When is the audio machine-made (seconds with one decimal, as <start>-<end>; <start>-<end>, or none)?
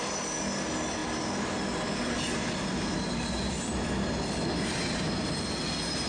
none